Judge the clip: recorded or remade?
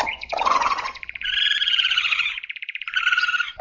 remade